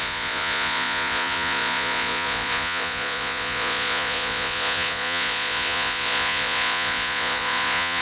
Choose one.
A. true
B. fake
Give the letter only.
B